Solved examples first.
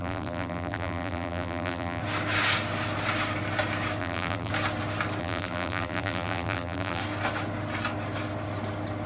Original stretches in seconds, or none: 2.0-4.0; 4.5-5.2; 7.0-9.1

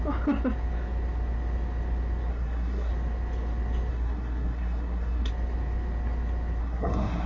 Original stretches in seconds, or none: 0.0-2.3; 2.9-3.9; 5.3-6.6

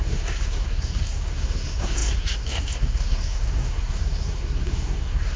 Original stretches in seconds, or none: none

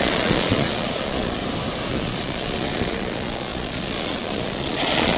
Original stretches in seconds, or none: 1.4-1.9

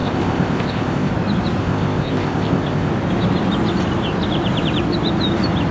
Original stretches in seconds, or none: 1.1-1.6; 2.9-5.7